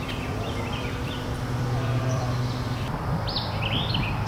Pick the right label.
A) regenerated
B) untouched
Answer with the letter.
A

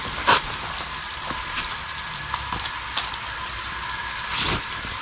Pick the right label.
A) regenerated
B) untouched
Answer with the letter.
A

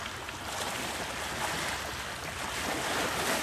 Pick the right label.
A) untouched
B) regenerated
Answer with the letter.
A